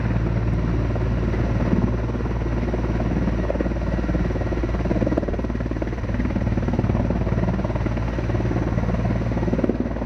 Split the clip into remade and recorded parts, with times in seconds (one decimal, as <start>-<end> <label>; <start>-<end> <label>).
0.0-4.6 recorded; 4.6-7.0 remade; 7.0-10.1 recorded